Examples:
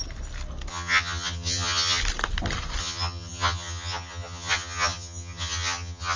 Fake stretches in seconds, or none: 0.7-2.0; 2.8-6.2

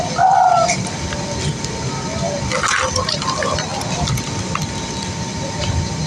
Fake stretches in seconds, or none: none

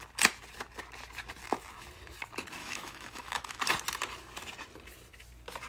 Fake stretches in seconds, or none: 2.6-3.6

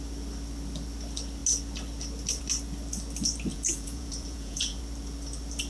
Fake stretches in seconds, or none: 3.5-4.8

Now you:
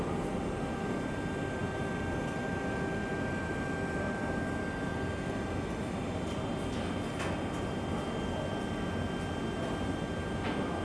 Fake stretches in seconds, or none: none